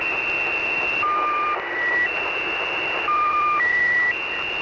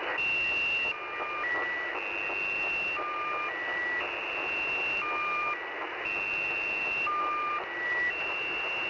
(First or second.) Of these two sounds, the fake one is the first